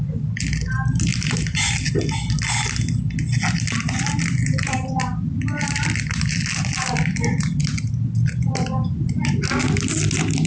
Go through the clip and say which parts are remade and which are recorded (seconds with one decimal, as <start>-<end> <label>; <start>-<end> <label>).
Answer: 0.0-10.5 recorded